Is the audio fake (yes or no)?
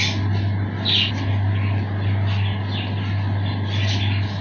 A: no